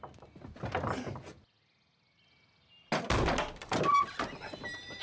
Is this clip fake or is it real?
real